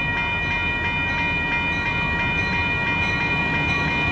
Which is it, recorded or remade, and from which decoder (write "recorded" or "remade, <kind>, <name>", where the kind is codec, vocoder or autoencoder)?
recorded